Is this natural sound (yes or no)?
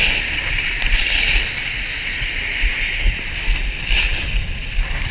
yes